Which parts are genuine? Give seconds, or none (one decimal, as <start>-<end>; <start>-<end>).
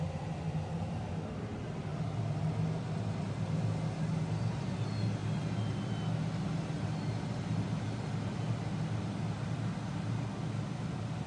0.0-11.3